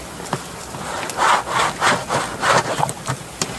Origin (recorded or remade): remade